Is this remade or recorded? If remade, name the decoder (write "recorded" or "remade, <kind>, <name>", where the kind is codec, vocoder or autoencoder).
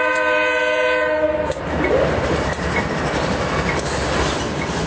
remade, vocoder, BigVGAN v2